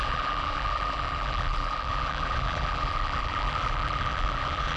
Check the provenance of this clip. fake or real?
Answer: fake